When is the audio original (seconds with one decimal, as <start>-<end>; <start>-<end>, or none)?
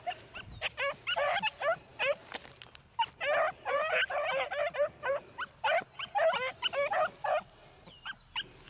0.0-8.7